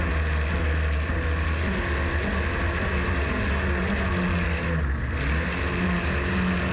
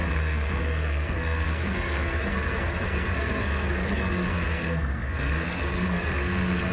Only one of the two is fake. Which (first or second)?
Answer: second